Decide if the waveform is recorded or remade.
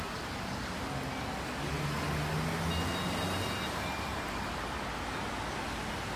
recorded